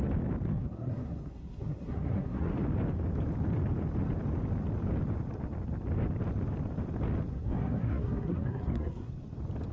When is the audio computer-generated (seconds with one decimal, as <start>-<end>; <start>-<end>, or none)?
0.5-2.5; 7.3-9.1